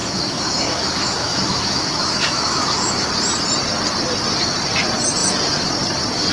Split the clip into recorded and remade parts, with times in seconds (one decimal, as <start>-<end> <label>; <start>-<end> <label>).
0.0-3.1 remade; 3.1-6.3 recorded